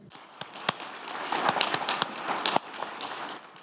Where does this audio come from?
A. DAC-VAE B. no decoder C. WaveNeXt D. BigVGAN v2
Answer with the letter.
B